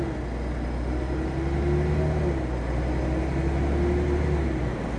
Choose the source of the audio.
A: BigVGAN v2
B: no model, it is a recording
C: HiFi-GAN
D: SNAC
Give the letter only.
B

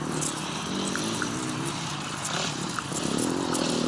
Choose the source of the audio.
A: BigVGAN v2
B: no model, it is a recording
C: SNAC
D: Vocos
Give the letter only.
B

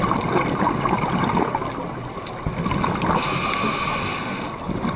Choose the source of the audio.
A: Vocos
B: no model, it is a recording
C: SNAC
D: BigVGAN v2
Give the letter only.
B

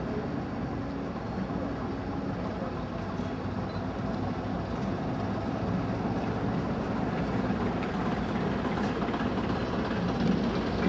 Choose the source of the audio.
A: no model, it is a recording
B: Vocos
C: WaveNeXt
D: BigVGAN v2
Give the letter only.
A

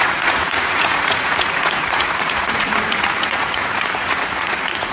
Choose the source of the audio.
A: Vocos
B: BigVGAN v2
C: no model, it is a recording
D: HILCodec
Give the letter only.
A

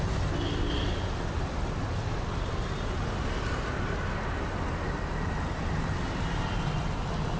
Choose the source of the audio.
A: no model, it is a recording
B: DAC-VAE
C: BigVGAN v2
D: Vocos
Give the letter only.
A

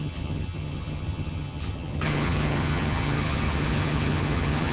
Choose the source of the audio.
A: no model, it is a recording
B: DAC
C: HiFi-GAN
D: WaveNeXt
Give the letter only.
C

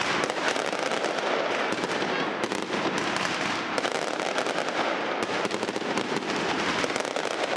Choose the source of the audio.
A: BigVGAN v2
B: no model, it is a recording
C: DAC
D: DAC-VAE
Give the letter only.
B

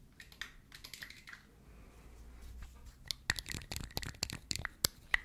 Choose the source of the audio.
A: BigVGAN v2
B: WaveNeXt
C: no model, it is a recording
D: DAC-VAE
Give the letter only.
C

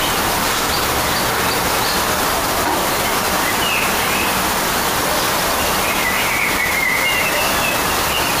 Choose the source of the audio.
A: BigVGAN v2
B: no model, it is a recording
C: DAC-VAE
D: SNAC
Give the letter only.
B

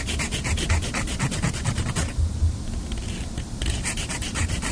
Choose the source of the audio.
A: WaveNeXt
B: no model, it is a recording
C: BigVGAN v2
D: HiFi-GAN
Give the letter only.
B